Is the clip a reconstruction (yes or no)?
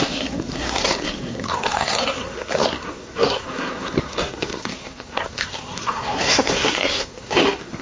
yes